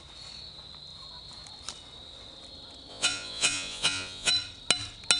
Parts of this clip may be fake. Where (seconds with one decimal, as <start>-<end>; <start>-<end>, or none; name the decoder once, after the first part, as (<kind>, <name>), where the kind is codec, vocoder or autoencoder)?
2.9-4.3 (vocoder, Vocos)